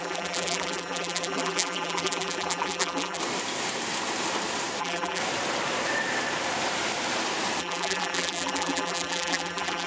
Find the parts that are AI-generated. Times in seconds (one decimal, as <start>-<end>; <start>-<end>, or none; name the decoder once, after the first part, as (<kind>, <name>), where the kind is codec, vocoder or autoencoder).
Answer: 0.0-3.2 (vocoder, BigVGAN v2); 4.8-5.2; 7.6-9.9